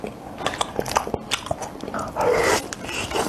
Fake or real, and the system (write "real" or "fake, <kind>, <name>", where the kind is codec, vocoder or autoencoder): real